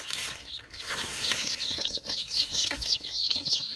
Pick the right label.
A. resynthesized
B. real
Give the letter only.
A